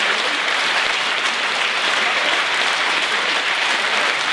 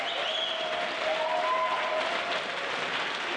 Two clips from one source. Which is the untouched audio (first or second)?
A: second